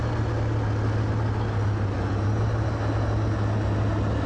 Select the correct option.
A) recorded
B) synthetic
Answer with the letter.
A